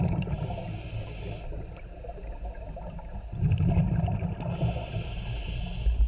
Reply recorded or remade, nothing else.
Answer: recorded